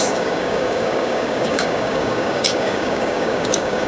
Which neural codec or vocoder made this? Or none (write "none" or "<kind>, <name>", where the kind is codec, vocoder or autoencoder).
codec, DAC